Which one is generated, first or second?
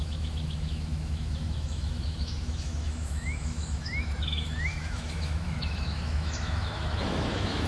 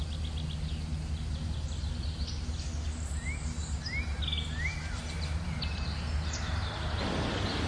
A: first